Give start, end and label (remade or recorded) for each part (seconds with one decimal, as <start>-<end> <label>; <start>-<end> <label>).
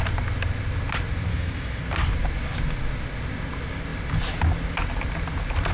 0.0-1.3 recorded; 1.3-1.8 remade; 1.8-5.7 recorded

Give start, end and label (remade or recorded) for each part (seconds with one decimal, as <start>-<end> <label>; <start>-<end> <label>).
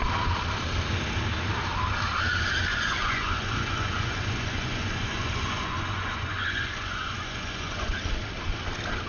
0.0-2.7 recorded; 2.7-8.0 remade; 8.0-9.1 recorded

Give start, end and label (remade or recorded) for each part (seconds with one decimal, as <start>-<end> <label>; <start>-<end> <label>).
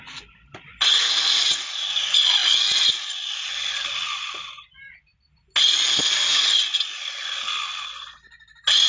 0.0-8.9 recorded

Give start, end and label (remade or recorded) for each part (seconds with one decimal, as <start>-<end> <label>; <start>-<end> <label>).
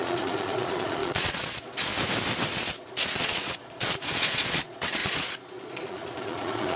0.0-1.9 remade; 1.9-2.5 recorded; 2.5-6.8 remade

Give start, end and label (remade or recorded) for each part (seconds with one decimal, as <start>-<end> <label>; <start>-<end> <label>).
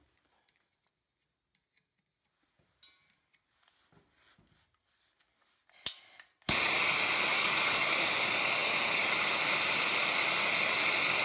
0.0-7.3 recorded; 7.3-8.1 remade; 8.1-11.2 recorded